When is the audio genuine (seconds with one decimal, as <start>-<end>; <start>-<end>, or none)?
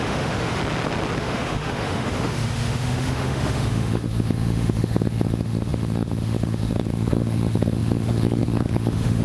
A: 0.6-1.2